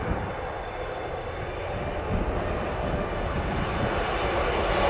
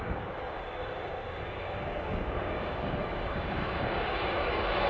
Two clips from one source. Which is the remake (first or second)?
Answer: second